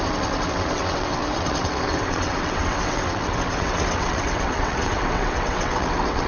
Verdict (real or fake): fake